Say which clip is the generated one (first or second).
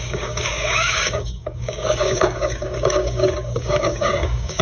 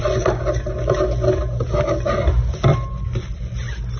first